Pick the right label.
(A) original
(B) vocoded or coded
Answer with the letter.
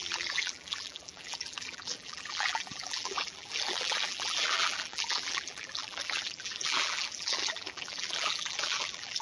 B